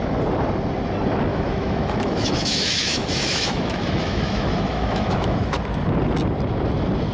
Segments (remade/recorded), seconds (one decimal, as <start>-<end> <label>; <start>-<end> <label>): 0.0-1.3 recorded; 1.3-5.6 remade; 5.6-7.1 recorded